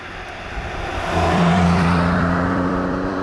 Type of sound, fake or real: fake